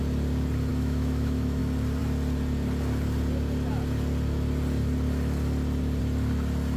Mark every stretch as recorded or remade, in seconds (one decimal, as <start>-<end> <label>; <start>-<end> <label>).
0.0-0.7 recorded; 0.7-1.6 remade; 1.6-6.8 recorded